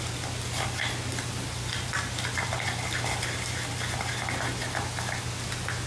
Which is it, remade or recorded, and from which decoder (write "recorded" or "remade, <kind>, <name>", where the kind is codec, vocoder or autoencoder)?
recorded